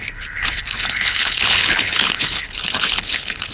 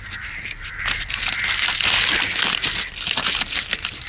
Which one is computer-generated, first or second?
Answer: first